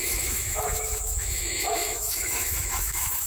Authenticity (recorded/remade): remade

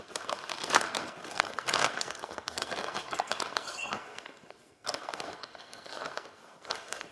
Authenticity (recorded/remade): remade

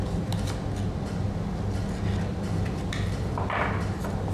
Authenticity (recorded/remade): recorded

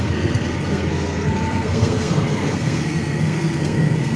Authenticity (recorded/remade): remade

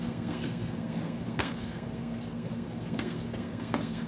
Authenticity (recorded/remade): remade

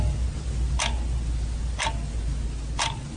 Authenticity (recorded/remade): recorded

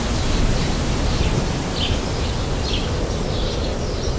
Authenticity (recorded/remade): recorded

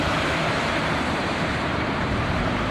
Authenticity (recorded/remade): remade